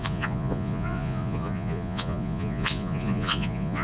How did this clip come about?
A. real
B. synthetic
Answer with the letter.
B